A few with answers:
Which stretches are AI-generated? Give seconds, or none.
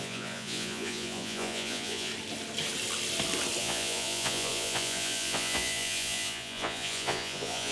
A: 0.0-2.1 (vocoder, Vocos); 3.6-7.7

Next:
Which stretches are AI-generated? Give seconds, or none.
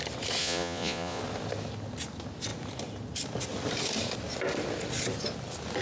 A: 0.4-1.2 (vocoder, Vocos)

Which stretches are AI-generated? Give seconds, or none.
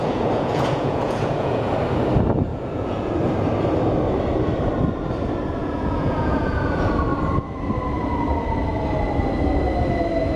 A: 0.0-1.7 (vocoder, Vocos); 2.5-3.2; 5.6-6.9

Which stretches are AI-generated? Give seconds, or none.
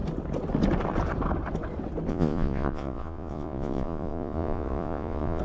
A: 2.1-5.4 (vocoder, Vocos)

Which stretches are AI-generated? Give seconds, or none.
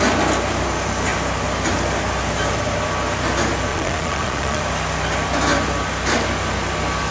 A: 3.7-4.6 (vocoder, Vocos)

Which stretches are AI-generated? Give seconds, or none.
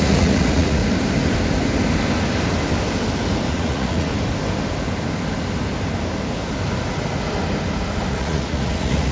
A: 0.0-0.8 (vocoder, Vocos); 3.5-4.1; 8.1-9.1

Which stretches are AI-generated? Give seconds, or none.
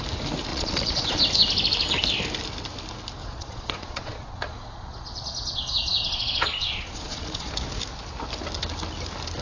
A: 0.5-1.2 (vocoder, Vocos); 3.2-7.5